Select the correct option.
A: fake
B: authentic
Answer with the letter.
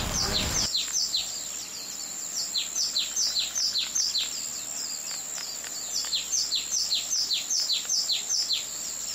B